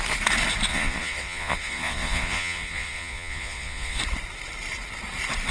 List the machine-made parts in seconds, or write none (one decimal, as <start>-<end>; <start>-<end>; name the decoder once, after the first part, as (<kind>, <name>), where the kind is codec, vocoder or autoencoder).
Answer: 0.7-4.0 (vocoder, Vocos)